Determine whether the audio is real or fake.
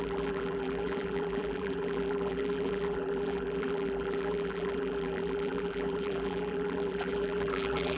fake